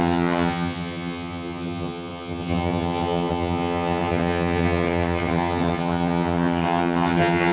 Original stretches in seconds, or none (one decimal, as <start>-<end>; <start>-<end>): none